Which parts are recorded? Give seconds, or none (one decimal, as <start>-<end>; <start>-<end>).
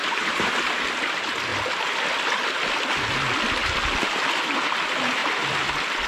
0.5-6.1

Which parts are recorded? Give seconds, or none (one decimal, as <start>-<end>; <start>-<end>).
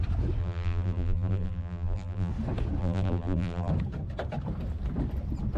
0.0-0.4; 2.3-2.8; 3.7-5.6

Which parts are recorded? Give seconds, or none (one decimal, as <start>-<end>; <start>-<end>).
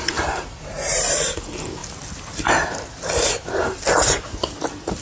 1.8-5.0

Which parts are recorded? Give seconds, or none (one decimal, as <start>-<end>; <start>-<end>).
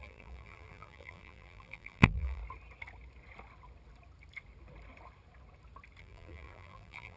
2.4-6.0